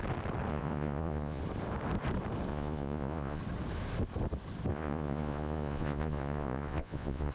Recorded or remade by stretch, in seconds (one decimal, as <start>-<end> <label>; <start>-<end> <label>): 0.0-0.5 recorded; 0.5-1.4 remade; 1.4-2.5 recorded; 2.5-3.4 remade; 3.4-4.7 recorded; 4.7-7.3 remade